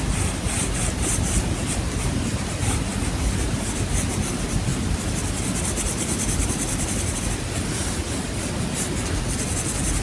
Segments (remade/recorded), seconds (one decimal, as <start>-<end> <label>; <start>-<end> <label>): 0.0-10.0 recorded